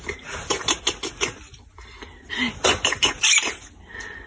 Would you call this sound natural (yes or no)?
yes